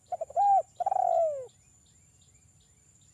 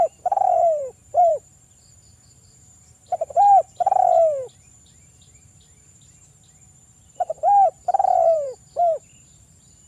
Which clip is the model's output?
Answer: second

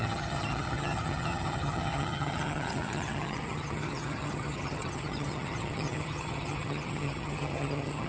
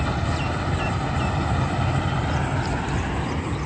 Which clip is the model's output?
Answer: first